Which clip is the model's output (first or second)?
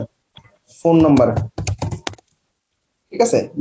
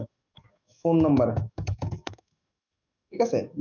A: second